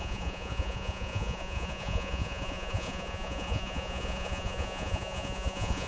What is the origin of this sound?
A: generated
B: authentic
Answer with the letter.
A